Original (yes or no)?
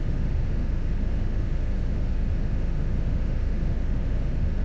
no